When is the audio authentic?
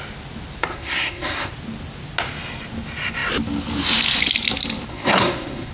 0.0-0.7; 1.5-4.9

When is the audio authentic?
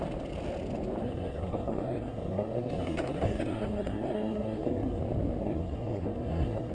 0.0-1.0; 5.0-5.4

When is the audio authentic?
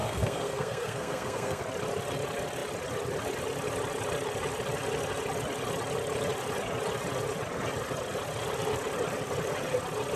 1.6-10.2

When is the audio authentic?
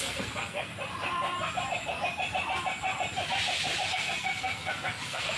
0.7-3.9